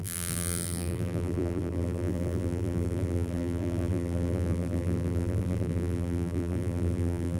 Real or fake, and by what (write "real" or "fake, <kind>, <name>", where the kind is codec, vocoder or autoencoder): fake, vocoder, BigVGAN v2